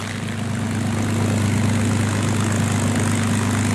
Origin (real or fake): real